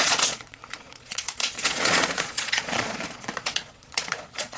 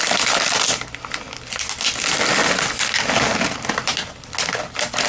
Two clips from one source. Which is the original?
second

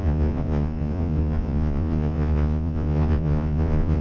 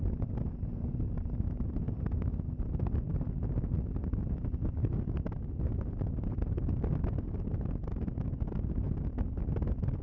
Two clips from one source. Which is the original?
second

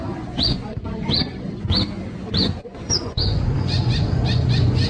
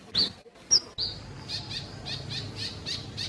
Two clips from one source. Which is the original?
second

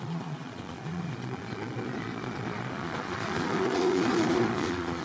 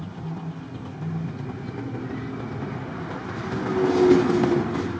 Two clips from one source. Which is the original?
second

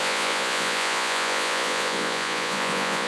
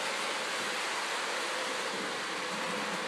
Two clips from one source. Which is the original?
second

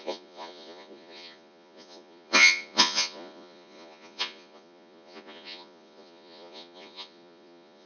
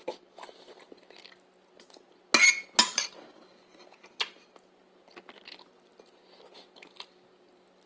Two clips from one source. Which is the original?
second